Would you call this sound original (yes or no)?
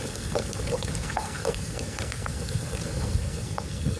no